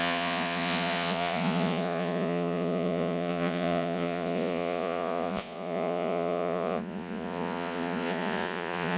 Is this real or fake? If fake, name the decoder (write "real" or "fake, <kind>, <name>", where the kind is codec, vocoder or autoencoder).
fake, vocoder, Vocos